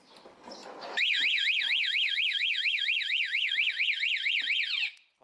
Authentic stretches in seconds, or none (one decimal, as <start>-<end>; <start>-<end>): 0.0-0.6; 3.7-5.2